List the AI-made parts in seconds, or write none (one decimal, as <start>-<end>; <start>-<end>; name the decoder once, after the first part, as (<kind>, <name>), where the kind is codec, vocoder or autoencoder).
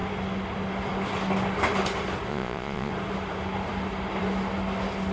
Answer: 2.3-2.9 (vocoder, Vocos)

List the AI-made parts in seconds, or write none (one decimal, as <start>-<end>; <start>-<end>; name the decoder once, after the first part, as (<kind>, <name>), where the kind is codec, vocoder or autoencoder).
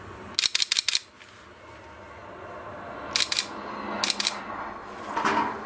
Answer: none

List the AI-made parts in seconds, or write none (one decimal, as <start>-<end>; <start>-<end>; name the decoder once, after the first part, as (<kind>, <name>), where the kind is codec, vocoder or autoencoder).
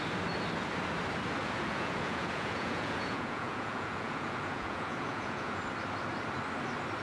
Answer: 1.4-5.6 (vocoder, Vocos)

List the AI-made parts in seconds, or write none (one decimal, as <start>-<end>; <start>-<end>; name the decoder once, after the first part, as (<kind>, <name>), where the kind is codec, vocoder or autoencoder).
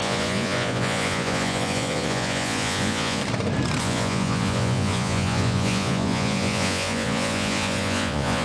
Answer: 0.0-3.2 (vocoder, Vocos); 3.8-8.4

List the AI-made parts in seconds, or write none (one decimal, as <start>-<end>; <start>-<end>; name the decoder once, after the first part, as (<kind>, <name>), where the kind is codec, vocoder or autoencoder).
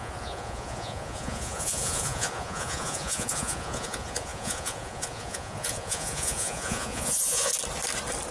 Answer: 0.0-7.5 (vocoder, Vocos)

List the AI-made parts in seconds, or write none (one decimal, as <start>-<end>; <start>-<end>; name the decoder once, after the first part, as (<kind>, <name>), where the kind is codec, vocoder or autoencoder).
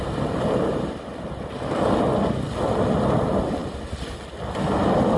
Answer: none